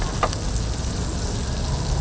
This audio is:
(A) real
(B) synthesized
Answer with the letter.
A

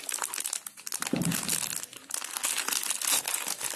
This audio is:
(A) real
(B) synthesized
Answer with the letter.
A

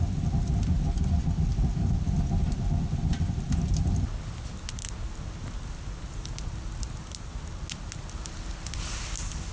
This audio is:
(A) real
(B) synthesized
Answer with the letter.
A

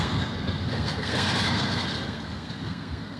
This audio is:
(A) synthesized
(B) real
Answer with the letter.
A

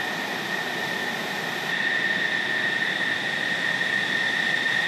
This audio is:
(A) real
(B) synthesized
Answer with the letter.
A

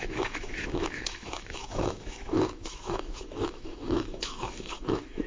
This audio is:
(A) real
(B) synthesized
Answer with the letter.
B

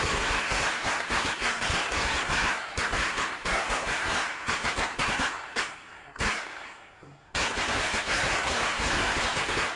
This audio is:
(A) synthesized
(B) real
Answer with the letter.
A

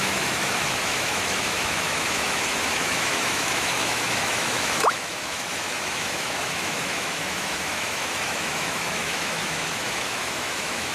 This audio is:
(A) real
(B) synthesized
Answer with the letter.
B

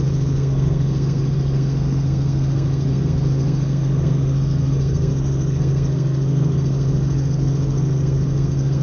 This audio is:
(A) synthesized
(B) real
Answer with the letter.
A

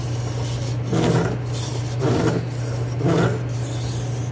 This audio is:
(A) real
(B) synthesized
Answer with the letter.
A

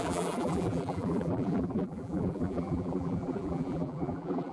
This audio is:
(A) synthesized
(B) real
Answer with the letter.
A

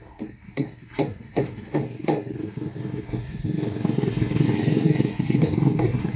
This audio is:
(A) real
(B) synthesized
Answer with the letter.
B